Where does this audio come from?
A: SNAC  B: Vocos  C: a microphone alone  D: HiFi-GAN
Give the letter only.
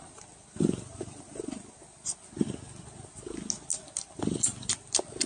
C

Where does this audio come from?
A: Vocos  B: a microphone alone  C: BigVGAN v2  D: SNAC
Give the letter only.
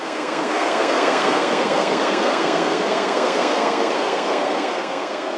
D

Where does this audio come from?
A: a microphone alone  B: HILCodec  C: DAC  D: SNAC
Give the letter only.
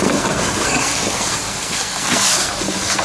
D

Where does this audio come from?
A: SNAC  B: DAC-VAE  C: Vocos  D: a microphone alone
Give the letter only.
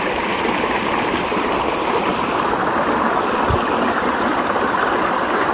D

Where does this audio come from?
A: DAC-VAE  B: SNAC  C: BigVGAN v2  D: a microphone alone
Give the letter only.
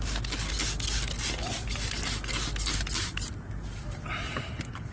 D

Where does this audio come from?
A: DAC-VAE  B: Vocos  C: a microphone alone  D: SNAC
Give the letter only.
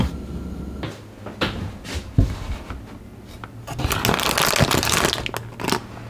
C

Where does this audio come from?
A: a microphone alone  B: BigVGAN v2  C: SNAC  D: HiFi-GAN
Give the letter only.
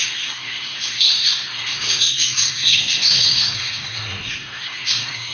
C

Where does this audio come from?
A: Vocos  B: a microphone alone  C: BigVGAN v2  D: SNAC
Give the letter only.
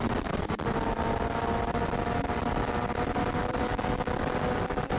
B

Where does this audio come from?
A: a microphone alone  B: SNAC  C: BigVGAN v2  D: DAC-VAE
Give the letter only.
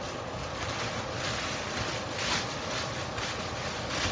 A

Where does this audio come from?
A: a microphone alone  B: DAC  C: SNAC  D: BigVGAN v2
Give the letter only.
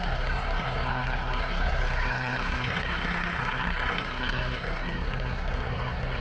C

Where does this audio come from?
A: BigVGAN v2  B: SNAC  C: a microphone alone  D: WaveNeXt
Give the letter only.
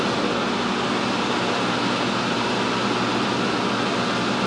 C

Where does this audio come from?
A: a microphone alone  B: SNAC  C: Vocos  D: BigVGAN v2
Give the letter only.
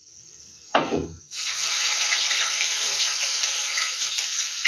B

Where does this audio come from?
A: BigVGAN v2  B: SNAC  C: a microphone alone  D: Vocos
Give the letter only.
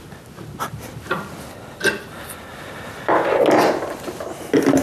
C